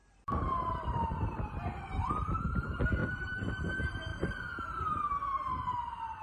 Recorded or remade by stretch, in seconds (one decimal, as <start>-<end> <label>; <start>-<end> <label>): 0.0-2.4 remade; 2.4-3.0 recorded; 3.0-3.5 remade; 3.5-4.1 recorded; 4.1-4.9 remade; 4.9-6.2 recorded